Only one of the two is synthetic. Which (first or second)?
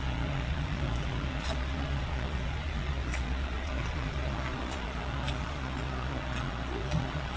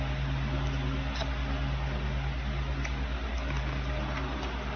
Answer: first